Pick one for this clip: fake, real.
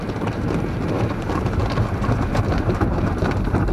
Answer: fake